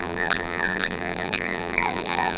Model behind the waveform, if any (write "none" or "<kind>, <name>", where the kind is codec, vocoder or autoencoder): vocoder, BigVGAN v2